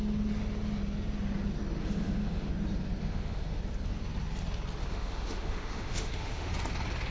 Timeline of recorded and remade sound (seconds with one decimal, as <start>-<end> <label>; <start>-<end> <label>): 0.0-1.8 recorded; 1.8-2.5 remade; 2.5-3.0 recorded; 3.0-3.6 remade; 3.6-4.8 recorded; 4.8-6.5 remade; 6.5-7.1 recorded